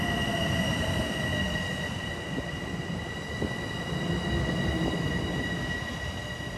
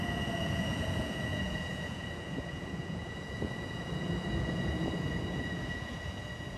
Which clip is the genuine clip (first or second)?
first